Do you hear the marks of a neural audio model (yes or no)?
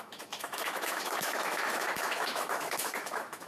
yes